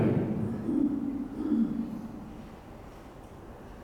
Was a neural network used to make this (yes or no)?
no